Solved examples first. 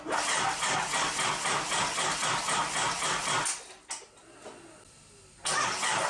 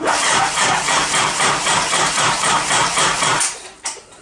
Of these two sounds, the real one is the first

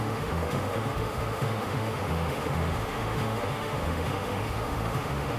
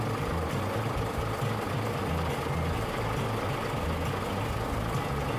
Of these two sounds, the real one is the second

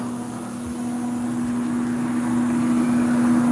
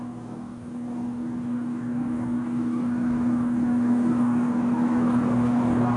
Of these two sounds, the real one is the first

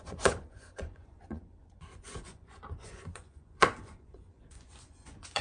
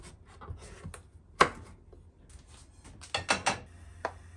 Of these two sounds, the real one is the second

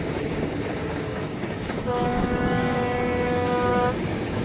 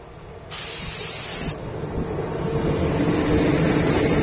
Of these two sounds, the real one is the second